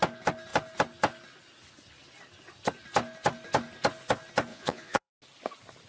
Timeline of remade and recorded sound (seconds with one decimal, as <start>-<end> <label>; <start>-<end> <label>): 0.0-4.5 recorded; 4.5-5.1 remade; 5.1-5.9 recorded